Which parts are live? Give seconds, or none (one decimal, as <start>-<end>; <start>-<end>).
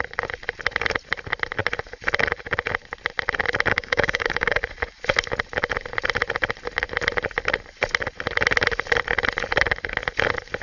0.0-3.7; 4.6-10.6